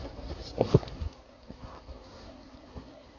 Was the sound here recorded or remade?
remade